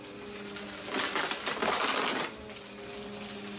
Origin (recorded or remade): recorded